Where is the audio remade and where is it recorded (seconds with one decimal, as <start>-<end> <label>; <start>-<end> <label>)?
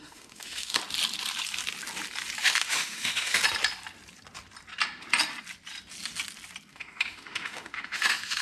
0.0-0.8 remade; 0.8-2.4 recorded; 2.4-3.4 remade; 3.4-6.7 recorded; 6.7-8.4 remade